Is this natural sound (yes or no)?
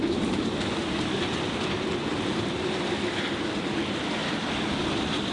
yes